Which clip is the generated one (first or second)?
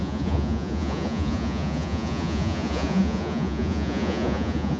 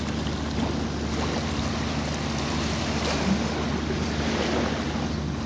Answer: first